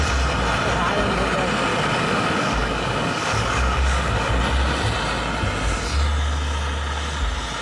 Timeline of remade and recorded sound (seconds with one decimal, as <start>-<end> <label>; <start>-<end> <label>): 0.0-1.7 recorded; 1.7-4.4 remade; 4.4-7.6 recorded